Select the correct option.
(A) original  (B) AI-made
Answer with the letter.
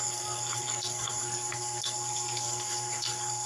B